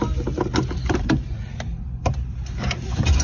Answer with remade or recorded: recorded